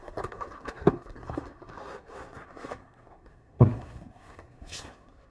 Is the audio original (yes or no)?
no